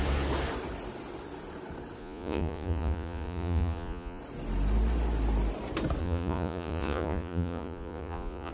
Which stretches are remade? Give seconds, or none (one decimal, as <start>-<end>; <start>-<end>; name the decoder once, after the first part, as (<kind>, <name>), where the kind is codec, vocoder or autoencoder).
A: 2.0-4.2 (vocoder, Vocos); 6.0-8.5